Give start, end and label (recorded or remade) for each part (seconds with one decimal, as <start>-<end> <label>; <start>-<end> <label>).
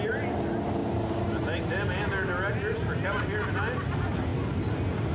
0.0-5.1 recorded